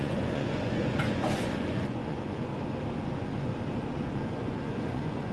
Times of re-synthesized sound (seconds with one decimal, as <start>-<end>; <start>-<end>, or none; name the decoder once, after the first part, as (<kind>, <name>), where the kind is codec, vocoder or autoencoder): 0.0-2.5 (vocoder, Vocos); 3.0-3.5; 4.0-5.3